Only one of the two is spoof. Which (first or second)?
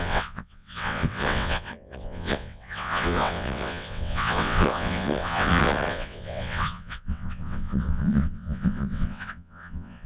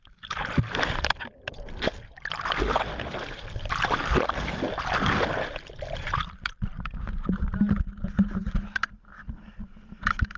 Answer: first